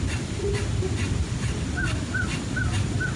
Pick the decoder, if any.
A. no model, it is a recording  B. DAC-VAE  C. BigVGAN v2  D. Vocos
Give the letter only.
A